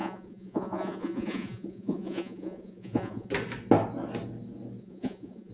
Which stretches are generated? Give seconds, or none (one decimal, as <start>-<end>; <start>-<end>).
0.0-3.3; 4.8-5.5